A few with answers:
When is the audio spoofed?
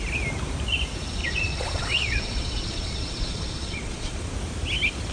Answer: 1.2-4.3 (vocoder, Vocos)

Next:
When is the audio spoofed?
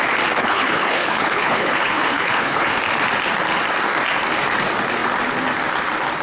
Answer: 0.4-2.8 (codec, HILCodec)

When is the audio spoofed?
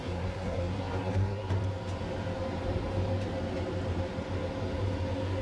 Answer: 0.0-1.5 (codec, SNAC)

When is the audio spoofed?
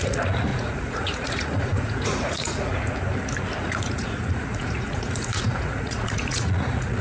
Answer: 0.0-2.7 (vocoder, Vocos); 3.6-7.0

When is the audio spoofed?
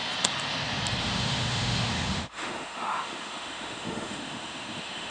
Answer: 1.0-5.1 (autoencoder, DAC-VAE)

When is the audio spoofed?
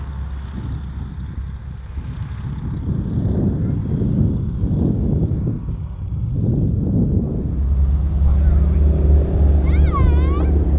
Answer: 3.8-6.3 (codec, DAC)